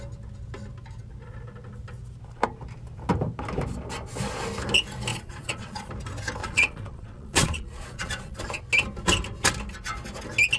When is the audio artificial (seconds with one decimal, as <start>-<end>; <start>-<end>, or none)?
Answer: 5.1-5.9; 6.4-8.6